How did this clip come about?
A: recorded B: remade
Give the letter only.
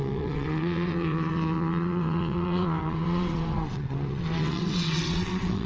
B